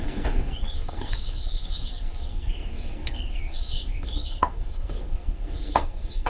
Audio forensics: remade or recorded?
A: remade